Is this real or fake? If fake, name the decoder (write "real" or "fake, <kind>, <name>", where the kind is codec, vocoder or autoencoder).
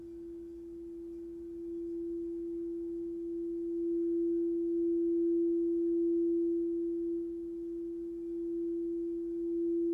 real